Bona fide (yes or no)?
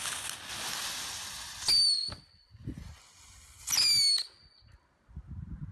yes